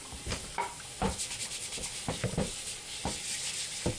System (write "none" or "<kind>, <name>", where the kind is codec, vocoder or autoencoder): none